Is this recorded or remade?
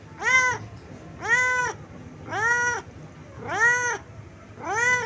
recorded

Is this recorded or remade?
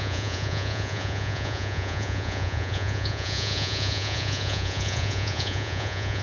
remade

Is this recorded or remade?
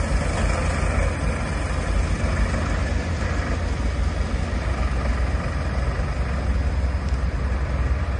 recorded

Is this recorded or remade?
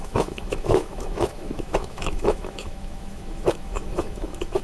remade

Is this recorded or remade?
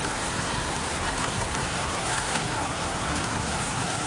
remade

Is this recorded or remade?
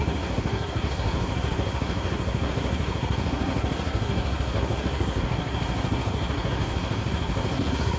remade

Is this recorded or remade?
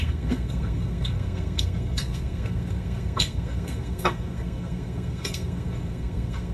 remade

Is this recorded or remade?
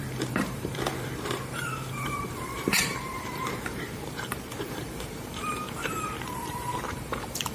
remade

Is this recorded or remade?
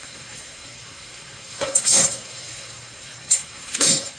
remade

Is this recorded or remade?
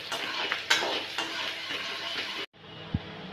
recorded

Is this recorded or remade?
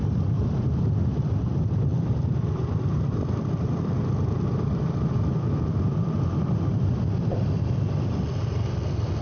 remade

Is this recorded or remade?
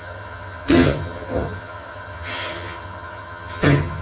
remade